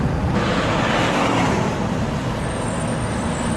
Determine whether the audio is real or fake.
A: real